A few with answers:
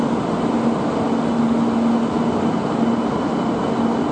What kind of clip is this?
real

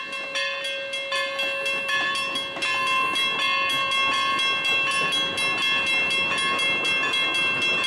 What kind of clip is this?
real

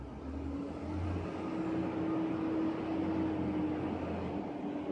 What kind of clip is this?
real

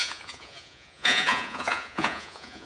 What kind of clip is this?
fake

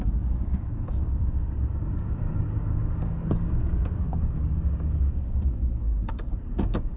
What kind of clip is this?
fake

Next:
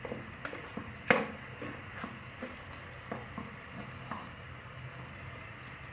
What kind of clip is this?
real